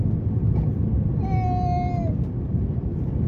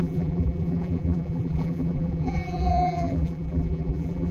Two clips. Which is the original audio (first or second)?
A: first